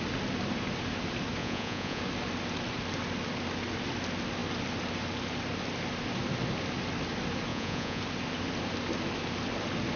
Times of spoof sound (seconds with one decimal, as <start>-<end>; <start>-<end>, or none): 1.4-2.0; 7.5-8.0